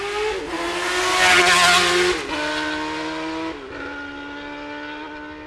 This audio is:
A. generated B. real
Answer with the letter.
B